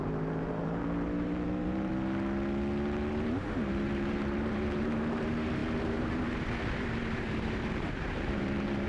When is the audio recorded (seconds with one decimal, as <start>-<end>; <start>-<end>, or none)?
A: 1.9-3.1